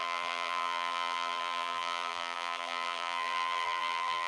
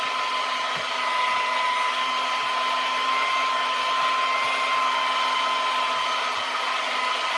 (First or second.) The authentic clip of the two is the second